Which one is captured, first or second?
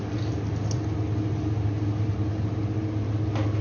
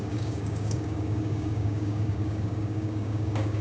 first